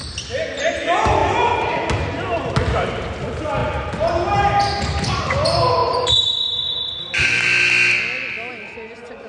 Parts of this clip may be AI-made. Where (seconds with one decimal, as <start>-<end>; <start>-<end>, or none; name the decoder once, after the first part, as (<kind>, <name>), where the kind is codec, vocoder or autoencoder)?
none